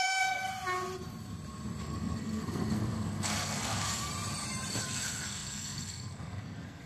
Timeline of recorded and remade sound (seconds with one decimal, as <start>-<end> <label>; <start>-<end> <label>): 0.0-0.5 remade; 0.5-1.8 recorded; 1.8-4.1 remade; 4.1-4.8 recorded; 4.8-6.9 remade